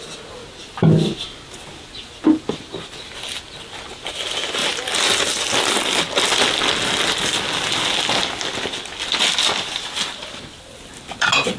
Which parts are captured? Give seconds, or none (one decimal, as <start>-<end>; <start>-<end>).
0.0-11.6